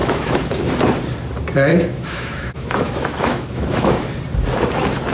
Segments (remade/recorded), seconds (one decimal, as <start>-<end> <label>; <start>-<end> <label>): 0.0-0.7 remade; 0.7-1.7 recorded; 1.7-4.1 remade; 4.1-5.1 recorded